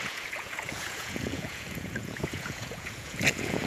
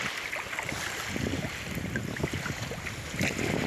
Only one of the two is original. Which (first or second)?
second